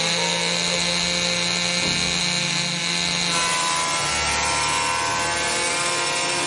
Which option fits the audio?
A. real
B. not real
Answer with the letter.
A